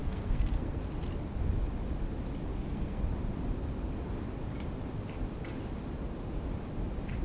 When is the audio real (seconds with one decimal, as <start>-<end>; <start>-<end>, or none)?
0.8-2.5; 3.0-7.2